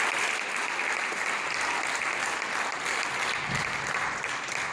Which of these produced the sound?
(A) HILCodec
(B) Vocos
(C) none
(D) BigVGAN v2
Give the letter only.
C